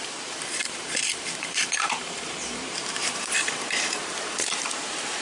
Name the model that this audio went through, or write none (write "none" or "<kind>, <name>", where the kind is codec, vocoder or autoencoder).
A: vocoder, BigVGAN v2